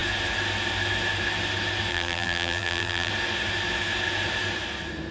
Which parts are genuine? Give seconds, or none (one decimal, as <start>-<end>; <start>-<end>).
0.0-1.9; 3.1-5.1